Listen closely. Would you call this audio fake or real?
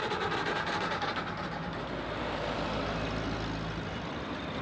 real